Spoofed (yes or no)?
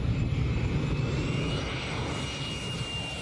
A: no